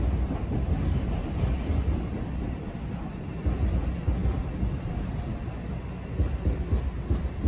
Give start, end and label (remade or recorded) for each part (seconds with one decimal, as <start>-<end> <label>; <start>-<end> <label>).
0.0-1.2 recorded; 1.2-2.8 remade; 2.8-7.5 recorded